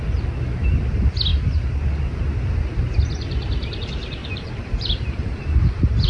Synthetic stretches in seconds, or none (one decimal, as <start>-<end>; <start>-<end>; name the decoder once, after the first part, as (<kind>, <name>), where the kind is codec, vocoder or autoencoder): 4.2-6.1 (vocoder, BigVGAN v2)